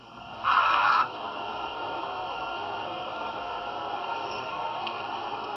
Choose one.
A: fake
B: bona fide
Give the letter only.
A